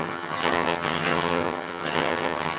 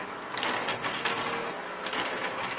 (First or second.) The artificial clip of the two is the first